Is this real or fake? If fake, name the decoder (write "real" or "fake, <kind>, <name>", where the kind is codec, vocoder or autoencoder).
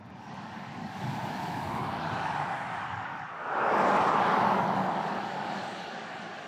fake, codec, DAC